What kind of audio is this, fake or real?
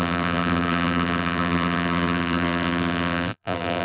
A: fake